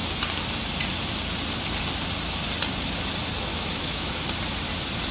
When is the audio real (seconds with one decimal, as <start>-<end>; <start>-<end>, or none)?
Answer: 0.0-3.5; 4.1-5.1